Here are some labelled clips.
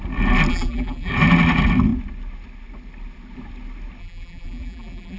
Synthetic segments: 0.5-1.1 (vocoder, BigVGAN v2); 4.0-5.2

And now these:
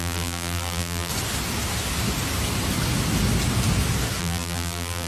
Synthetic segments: 0.0-1.1 (vocoder, BigVGAN v2); 4.2-5.1

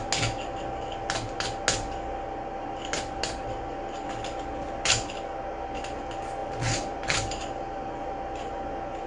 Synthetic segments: 6.4-8.0 (vocoder, BigVGAN v2)

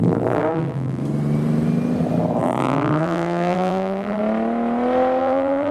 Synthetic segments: 0.0-1.0 (vocoder, BigVGAN v2); 2.4-4.2; 5.2-5.7